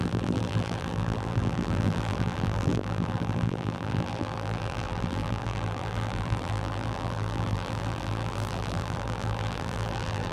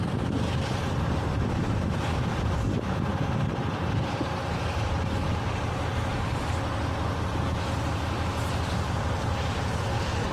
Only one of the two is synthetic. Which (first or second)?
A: first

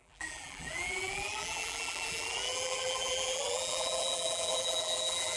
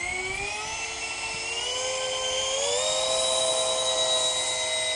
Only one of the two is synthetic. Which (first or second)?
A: first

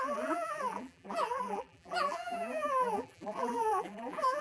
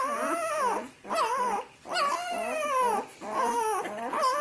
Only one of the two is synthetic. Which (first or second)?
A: first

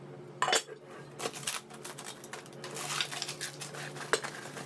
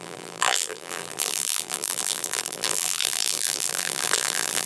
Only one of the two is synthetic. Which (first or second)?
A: second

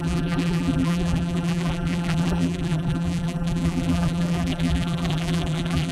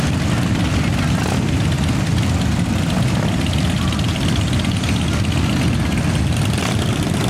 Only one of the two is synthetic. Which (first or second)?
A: first